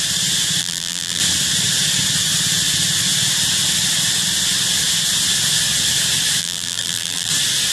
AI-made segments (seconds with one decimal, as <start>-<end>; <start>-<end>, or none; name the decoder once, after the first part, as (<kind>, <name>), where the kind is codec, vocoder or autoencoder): 0.6-1.2 (vocoder, BigVGAN v2); 6.4-7.3